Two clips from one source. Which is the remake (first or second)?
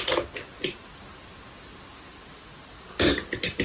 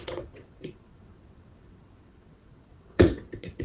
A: second